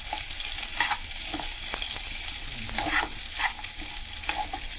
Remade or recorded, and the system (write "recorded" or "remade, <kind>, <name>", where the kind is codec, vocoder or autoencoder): recorded